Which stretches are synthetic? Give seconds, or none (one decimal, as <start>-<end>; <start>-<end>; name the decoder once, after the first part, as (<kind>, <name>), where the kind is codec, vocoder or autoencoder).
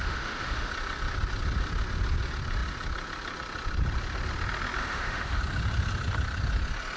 0.0-0.7 (autoencoder, DAC-VAE); 4.8-5.4